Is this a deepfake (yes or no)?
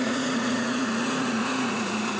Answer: yes